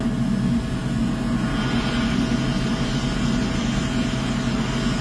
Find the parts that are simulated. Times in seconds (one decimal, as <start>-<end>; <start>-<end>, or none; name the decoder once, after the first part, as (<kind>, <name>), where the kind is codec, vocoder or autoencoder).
none